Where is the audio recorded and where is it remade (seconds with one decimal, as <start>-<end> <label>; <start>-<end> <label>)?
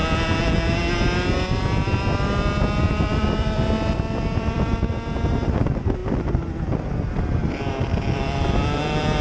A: 0.0-2.8 recorded; 2.8-9.2 remade